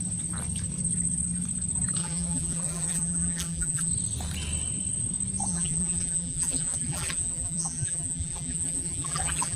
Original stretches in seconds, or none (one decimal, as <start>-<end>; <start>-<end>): 0.0-2.0; 3.9-5.5